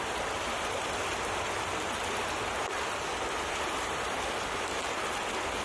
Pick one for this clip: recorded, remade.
remade